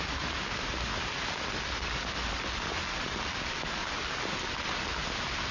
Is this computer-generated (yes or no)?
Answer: no